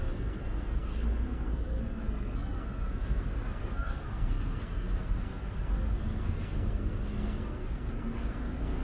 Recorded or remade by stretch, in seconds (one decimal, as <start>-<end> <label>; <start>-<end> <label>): 0.0-8.8 remade